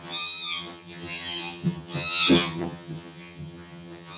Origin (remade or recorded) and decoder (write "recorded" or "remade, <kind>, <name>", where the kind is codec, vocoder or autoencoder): remade, vocoder, HiFi-GAN